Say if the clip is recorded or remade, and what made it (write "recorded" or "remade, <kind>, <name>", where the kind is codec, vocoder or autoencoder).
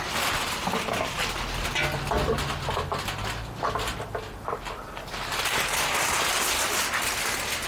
recorded